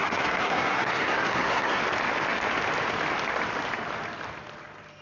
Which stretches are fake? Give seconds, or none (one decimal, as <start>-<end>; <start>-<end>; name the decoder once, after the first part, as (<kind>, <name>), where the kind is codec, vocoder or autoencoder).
0.0-1.8 (codec, SNAC)